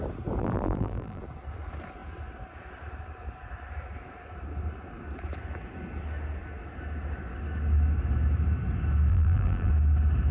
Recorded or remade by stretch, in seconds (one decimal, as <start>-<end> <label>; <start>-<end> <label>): 0.0-0.4 recorded; 0.4-1.2 remade; 1.2-9.1 recorded; 9.1-9.7 remade; 9.7-10.3 recorded